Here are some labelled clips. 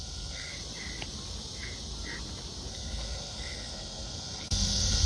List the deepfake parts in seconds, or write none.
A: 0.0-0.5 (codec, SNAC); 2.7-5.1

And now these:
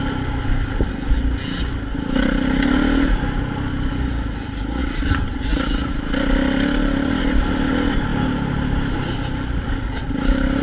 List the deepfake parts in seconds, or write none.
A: none

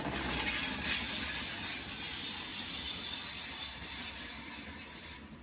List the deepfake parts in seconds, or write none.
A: 2.5-3.1 (vocoder, BigVGAN v2)